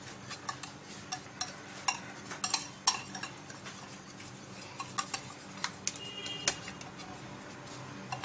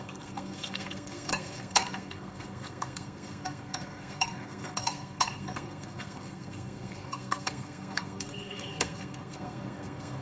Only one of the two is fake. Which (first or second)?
second